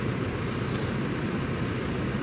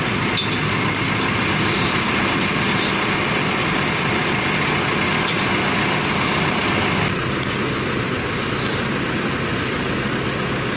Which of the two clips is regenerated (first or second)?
first